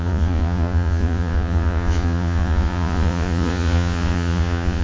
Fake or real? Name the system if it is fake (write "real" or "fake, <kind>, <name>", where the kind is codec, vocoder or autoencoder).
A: fake, vocoder, Vocos